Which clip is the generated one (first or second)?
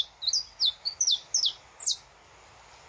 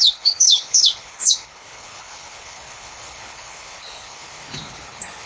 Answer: second